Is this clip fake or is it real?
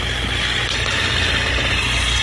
real